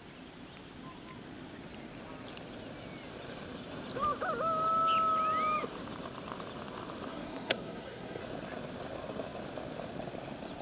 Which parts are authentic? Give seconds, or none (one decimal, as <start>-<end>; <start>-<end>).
0.0-7.1; 8.2-10.6